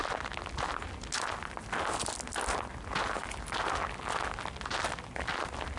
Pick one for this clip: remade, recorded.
recorded